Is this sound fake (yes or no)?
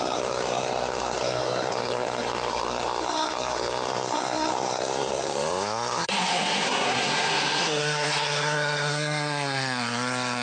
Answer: yes